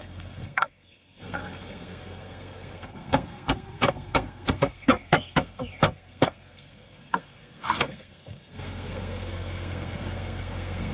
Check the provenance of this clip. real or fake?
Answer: fake